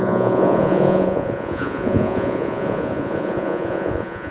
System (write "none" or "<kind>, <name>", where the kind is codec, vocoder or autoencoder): vocoder, Vocos